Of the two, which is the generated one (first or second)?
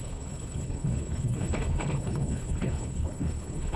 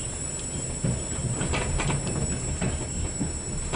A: first